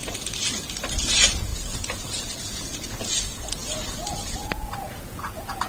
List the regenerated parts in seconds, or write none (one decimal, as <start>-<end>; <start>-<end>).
0.9-5.7